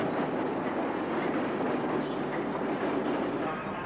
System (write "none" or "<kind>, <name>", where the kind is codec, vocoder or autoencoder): none